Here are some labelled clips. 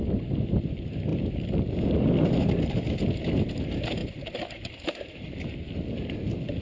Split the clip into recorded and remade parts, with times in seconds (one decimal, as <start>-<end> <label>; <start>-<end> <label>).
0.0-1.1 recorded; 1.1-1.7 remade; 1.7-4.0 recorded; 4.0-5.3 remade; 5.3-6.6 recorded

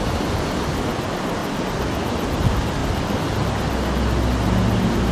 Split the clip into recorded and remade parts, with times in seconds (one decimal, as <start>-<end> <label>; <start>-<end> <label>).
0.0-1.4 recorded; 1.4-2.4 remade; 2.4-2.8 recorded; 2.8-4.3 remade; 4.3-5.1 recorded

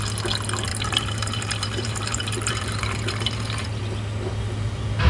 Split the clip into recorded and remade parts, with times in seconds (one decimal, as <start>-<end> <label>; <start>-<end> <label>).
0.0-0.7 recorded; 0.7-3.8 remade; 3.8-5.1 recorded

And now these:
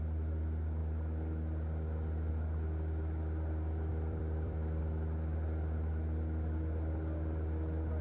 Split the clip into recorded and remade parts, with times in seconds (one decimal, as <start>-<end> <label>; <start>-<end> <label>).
0.0-3.9 recorded; 3.9-4.8 remade; 4.8-8.0 recorded

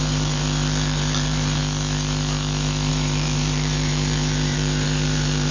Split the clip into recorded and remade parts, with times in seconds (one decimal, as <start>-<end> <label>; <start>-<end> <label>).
0.0-1.6 remade; 1.6-2.9 recorded; 2.9-5.5 remade